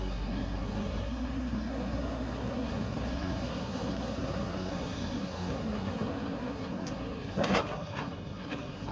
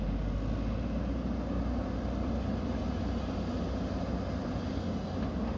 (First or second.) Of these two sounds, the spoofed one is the first